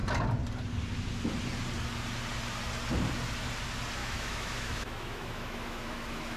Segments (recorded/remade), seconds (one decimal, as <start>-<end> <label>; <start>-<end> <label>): 0.0-4.0 recorded; 4.0-6.4 remade